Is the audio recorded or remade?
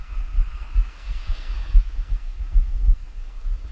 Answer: remade